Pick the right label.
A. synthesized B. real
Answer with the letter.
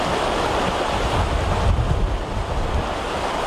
B